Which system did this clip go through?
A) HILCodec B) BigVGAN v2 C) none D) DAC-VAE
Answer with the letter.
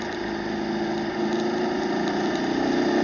C